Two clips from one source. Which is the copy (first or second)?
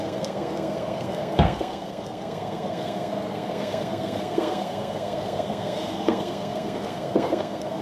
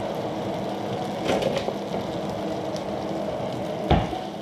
first